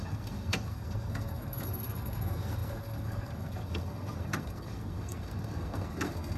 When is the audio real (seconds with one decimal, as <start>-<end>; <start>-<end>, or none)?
none